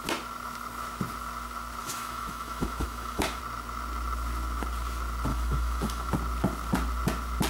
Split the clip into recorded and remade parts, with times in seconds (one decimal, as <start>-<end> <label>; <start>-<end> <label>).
0.0-1.8 recorded; 1.8-3.4 remade; 3.4-5.3 recorded; 5.3-6.1 remade; 6.1-7.5 recorded